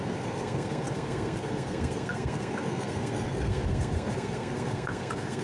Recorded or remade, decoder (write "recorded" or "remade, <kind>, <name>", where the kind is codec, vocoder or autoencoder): remade, codec, SNAC